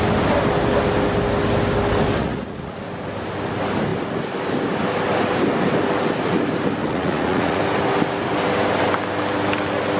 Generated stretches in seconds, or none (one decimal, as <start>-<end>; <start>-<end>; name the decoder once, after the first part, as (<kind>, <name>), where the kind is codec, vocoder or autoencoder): 2.2-2.8 (vocoder, Vocos); 6.8-7.6